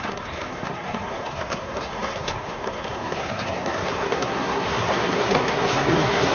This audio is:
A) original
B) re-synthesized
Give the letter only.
B